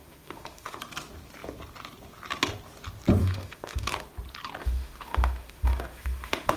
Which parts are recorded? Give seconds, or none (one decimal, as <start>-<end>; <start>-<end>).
0.8-3.2; 3.9-4.6